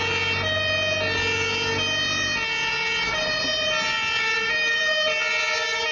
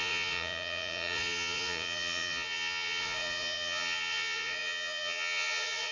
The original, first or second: first